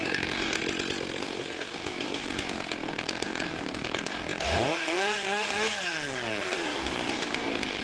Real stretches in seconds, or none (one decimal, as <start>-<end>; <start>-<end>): 0.6-1.2